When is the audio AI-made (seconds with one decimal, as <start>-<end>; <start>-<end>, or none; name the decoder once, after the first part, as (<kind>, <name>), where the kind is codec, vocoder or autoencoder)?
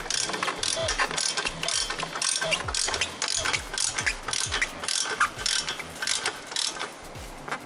none